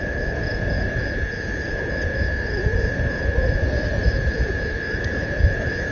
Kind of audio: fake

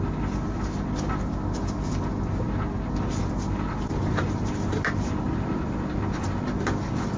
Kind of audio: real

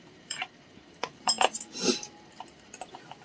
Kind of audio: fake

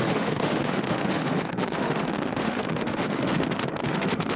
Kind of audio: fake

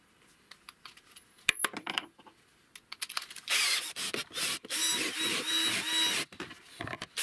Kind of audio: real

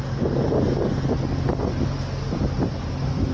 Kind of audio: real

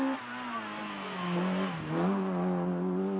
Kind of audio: real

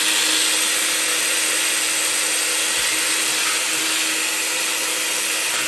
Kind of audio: real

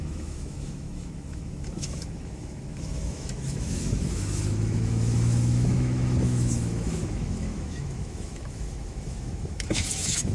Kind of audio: fake